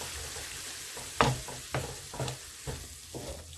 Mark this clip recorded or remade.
recorded